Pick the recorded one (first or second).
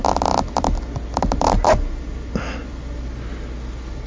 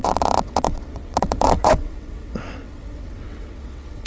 first